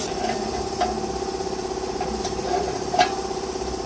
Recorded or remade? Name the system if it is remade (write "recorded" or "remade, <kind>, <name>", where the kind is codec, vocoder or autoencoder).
remade, vocoder, BigVGAN v2